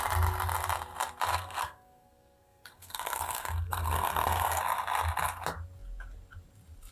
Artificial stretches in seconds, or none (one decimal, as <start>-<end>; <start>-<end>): 1.3-4.6